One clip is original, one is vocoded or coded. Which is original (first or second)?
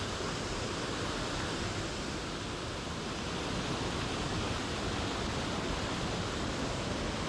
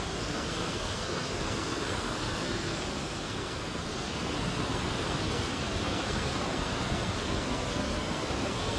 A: first